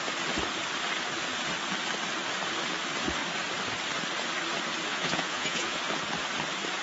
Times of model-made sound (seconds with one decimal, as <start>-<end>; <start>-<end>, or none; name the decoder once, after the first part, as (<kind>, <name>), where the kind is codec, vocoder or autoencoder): 4.9-5.8 (vocoder, Vocos)

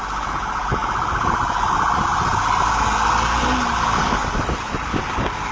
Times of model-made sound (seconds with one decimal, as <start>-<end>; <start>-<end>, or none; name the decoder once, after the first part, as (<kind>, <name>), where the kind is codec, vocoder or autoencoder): 4.2-4.9 (vocoder, BigVGAN v2)

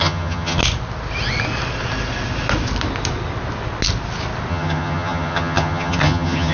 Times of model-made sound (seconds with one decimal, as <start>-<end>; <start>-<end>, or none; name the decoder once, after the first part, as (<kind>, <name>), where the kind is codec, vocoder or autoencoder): 0.0-0.6 (vocoder, HiFi-GAN); 4.5-6.5

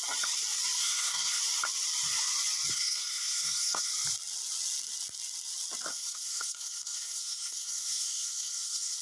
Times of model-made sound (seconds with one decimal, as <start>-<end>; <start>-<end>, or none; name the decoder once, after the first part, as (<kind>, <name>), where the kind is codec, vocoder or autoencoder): 0.8-1.4 (codec, SNAC); 2.7-3.9; 5.9-9.0

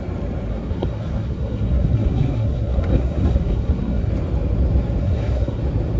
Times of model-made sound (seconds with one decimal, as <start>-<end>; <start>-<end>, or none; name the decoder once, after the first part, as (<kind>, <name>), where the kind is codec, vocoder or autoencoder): 0.5-4.1 (codec, SNAC); 5.0-5.6

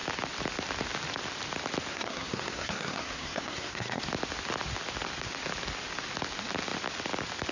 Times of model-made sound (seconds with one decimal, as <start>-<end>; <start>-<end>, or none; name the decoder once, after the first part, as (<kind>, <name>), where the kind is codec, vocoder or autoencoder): 1.9-4.0 (codec, SNAC)

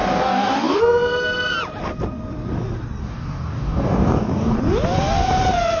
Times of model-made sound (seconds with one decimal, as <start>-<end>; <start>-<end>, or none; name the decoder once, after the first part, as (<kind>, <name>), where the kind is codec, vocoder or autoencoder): 0.0-0.8 (codec, DAC); 3.0-4.6

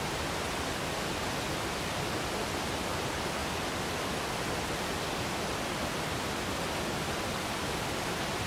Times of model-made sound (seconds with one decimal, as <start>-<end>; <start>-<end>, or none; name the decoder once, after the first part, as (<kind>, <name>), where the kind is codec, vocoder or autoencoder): none